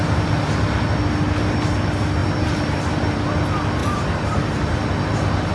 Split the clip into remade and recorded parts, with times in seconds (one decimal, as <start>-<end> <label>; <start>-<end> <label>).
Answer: 0.0-2.2 recorded; 2.2-3.3 remade; 3.3-3.8 recorded; 3.8-5.5 remade